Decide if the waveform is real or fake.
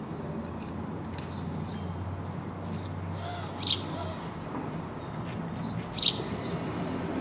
real